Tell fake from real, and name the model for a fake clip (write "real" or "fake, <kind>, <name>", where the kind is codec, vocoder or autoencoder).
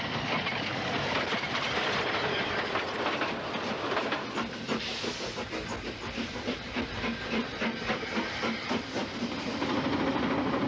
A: real